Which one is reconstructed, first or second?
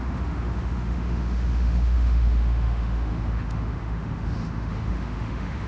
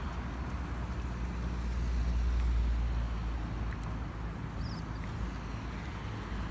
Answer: first